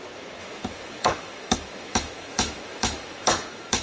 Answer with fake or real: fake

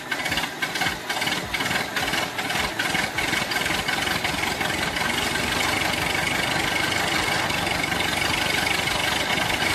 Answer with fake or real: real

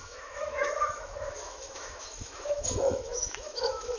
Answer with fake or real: fake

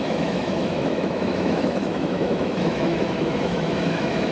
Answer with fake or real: fake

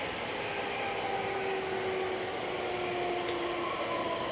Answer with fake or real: real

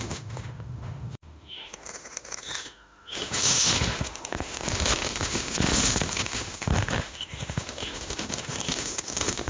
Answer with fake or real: fake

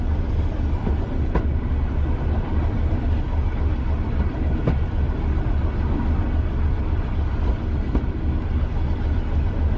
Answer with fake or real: real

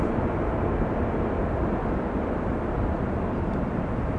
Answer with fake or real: real